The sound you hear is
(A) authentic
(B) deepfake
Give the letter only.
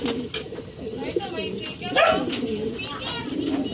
A